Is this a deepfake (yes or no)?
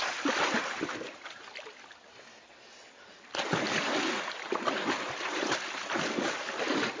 no